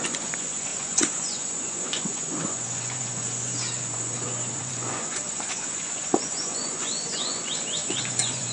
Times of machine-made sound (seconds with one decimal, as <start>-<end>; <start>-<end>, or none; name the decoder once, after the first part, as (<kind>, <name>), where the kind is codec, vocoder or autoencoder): 0.0-8.5 (vocoder, Vocos)